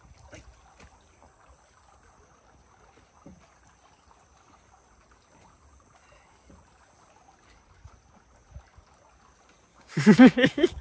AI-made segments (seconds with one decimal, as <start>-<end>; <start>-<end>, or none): 9.7-10.8